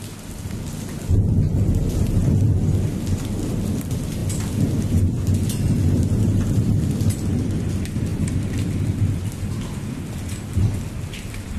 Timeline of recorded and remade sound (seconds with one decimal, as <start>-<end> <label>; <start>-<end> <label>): 0.0-11.6 recorded